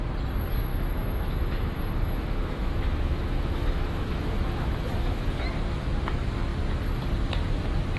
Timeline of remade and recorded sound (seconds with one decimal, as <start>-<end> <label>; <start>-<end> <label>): 0.0-0.7 recorded; 0.7-5.3 remade; 5.3-8.0 recorded